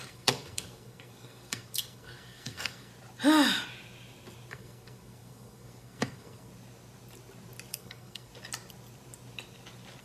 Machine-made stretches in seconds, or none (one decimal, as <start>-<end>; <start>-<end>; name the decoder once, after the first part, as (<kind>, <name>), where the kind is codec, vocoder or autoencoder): 0.0-2.9 (codec, SNAC); 4.5-6.5; 7.7-8.3